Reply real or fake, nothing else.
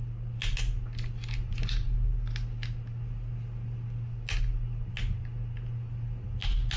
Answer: real